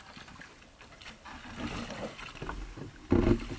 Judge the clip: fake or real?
real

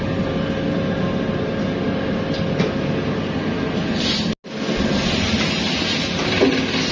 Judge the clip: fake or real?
real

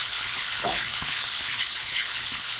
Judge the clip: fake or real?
fake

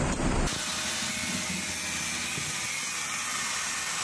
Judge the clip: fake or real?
real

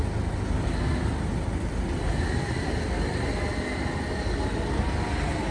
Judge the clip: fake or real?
real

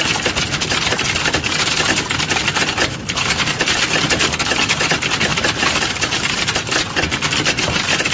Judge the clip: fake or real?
real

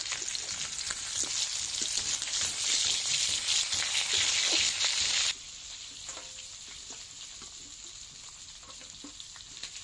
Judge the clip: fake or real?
real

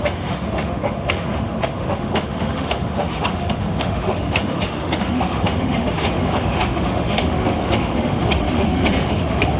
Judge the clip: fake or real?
fake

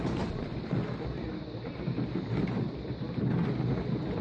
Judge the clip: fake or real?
real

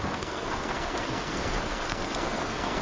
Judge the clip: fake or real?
fake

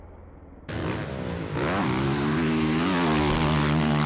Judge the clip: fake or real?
real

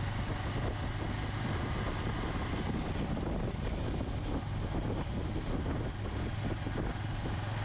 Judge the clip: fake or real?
real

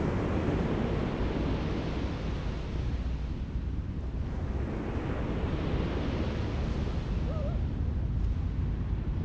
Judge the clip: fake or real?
real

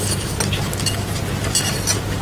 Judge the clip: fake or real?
real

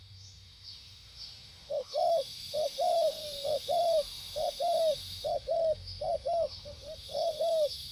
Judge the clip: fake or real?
fake